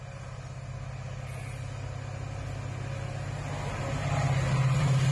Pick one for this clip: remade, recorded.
recorded